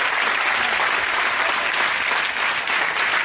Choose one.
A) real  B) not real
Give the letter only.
A